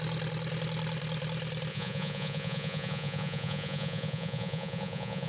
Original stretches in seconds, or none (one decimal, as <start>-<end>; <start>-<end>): 0.0-1.7